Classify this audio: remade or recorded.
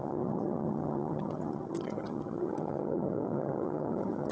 remade